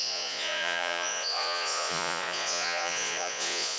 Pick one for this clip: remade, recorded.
remade